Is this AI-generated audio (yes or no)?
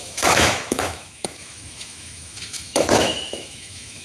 yes